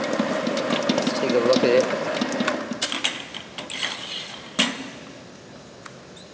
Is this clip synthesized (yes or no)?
no